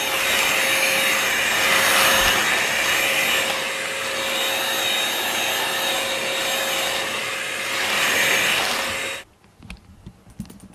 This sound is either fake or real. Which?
real